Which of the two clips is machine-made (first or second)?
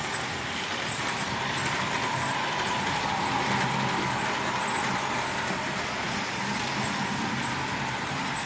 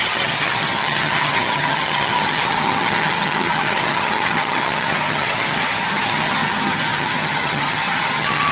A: second